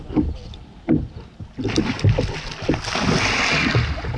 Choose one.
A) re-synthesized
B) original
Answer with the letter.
B